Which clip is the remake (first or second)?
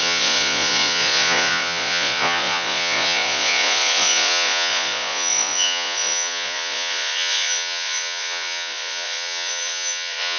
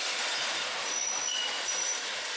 first